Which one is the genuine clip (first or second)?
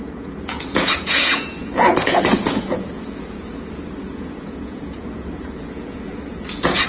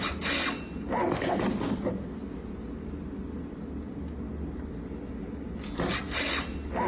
second